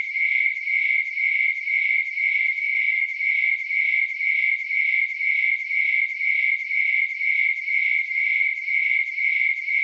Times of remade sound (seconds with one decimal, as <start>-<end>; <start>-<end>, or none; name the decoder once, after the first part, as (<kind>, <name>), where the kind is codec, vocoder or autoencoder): none